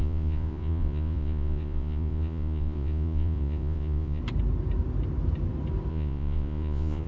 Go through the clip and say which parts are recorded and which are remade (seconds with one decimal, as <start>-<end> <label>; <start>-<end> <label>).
0.0-4.2 remade; 4.2-5.9 recorded; 5.9-7.1 remade